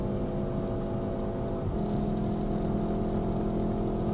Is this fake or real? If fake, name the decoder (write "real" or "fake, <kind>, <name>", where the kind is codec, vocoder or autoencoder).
real